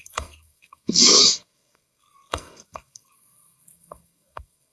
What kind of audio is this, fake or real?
fake